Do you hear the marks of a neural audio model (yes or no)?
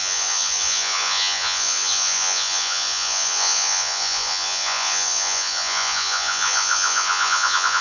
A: yes